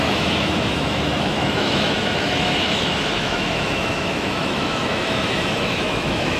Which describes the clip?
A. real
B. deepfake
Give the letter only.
B